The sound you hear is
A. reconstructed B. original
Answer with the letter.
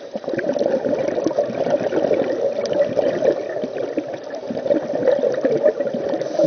B